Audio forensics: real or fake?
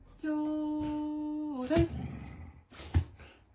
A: real